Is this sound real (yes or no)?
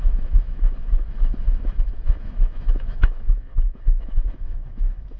no